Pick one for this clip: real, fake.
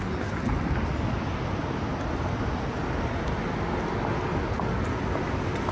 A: real